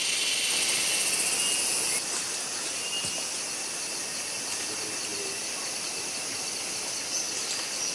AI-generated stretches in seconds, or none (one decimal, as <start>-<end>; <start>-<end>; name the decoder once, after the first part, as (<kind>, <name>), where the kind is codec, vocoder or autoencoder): none